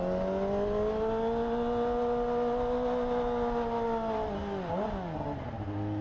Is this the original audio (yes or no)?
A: yes